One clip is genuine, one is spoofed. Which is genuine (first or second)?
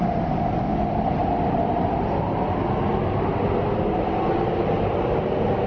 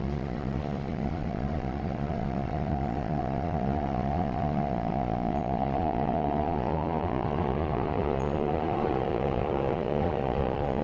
first